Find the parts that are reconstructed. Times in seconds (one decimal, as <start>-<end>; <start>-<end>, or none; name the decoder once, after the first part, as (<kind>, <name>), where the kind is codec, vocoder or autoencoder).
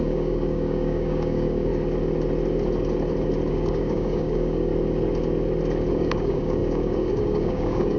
0.0-1.7 (codec, DAC); 3.5-4.7; 5.9-8.0